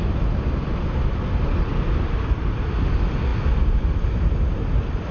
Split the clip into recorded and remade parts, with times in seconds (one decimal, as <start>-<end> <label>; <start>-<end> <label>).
0.0-5.1 recorded